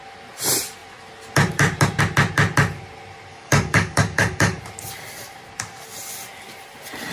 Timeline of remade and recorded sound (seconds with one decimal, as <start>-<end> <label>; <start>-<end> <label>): 0.0-3.3 recorded; 3.3-4.6 remade; 4.6-7.1 recorded